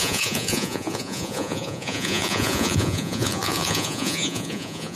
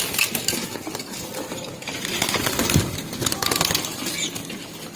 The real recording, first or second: second